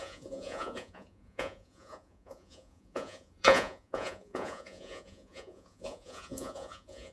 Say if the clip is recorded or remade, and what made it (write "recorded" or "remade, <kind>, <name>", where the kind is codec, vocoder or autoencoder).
remade, vocoder, Vocos